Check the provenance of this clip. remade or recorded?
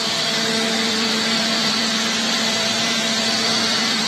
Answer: remade